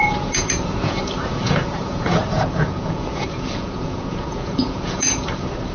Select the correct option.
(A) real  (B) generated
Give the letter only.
B